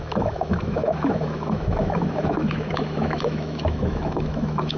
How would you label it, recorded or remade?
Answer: remade